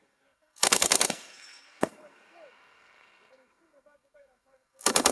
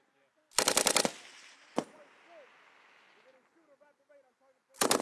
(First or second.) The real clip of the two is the second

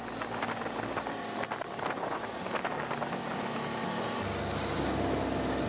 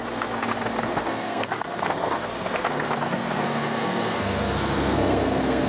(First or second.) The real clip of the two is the first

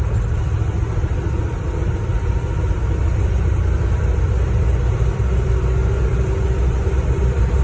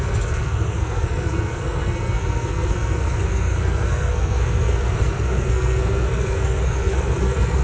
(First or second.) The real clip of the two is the first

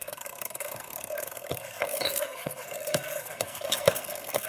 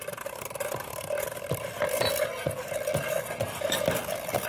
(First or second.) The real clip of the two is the second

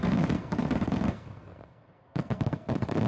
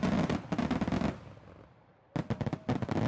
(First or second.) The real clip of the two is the second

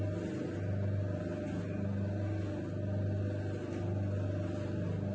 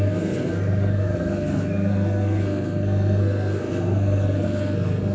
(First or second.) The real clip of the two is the first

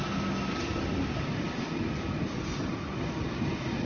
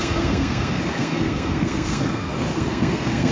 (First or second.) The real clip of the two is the first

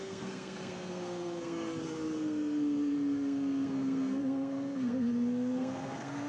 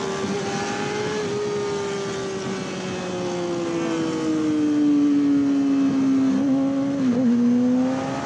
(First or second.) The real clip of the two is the second